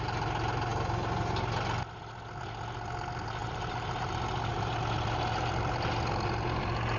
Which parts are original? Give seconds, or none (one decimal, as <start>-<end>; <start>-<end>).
0.0-3.4; 4.1-7.0